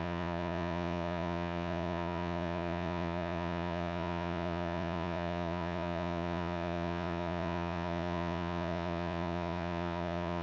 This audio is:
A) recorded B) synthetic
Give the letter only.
B